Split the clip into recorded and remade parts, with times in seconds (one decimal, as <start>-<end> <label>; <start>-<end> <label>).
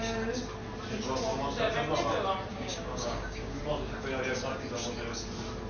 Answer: 0.0-2.5 recorded; 2.5-3.6 remade; 3.6-5.7 recorded